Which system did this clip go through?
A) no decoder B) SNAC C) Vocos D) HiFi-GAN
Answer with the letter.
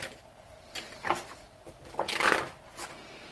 A